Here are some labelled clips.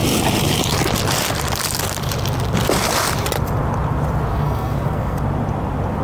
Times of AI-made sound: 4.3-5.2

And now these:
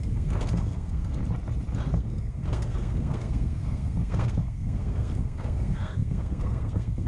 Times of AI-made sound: 0.0-1.2; 1.9-7.1

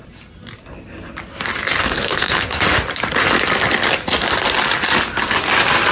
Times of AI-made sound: 1.8-2.6